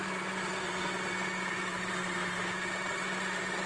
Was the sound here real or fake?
real